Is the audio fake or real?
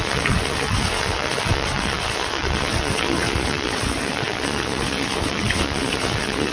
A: fake